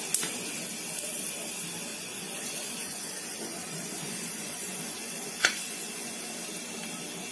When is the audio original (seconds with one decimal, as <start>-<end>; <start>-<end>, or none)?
0.0-1.9; 6.2-7.3